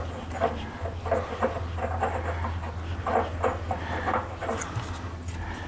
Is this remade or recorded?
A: recorded